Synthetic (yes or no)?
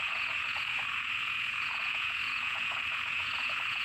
yes